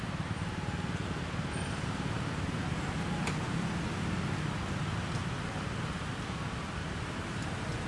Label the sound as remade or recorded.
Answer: recorded